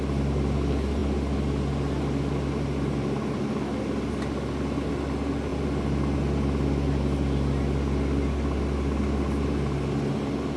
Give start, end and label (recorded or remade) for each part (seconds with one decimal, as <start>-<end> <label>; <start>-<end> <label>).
0.0-10.6 recorded